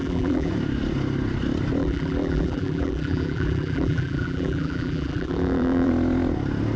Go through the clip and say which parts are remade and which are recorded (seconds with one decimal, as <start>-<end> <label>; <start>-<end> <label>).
0.0-0.5 remade; 0.5-1.8 recorded; 1.8-5.9 remade; 5.9-6.8 recorded